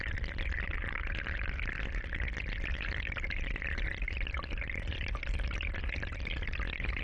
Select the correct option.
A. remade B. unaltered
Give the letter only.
B